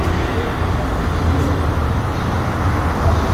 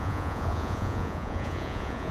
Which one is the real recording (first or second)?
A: first